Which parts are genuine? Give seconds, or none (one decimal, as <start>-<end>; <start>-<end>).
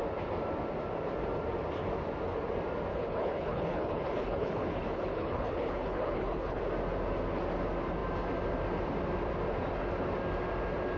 0.0-2.9; 6.6-11.0